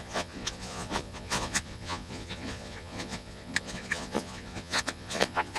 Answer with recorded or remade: remade